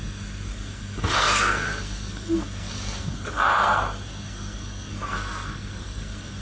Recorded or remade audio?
remade